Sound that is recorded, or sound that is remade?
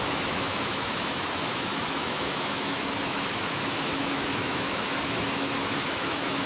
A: remade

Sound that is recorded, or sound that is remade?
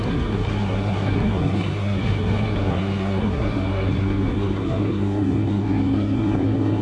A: remade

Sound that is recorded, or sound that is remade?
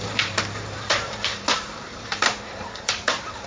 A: remade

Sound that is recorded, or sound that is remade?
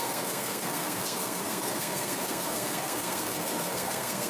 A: remade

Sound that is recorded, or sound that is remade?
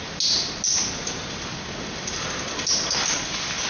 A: recorded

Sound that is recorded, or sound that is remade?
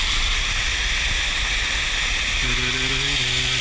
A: recorded